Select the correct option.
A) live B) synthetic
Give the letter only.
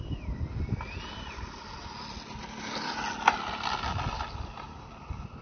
A